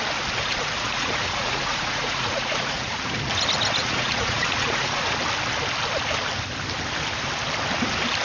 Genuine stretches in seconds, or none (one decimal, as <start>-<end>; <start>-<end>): 0.0-0.4; 2.9-3.8; 5.1-8.2